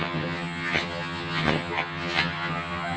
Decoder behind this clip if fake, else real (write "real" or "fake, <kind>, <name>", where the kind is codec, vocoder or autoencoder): fake, vocoder, HiFi-GAN